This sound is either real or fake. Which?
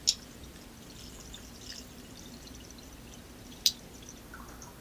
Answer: real